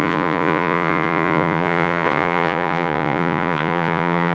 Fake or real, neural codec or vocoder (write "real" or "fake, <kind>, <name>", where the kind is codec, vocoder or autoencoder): fake, vocoder, Vocos